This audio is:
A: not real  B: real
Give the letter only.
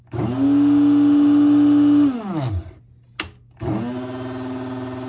B